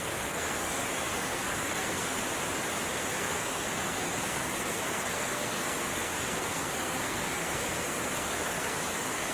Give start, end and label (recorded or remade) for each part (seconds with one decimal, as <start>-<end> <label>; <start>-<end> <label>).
0.0-2.2 remade; 2.2-2.9 recorded; 2.9-9.3 remade